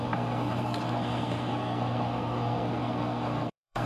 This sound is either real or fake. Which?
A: fake